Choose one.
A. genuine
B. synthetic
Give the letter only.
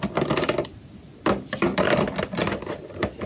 A